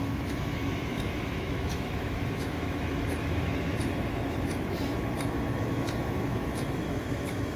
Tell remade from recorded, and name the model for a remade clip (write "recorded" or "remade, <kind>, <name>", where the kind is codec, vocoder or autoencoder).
remade, autoencoder, DAC-VAE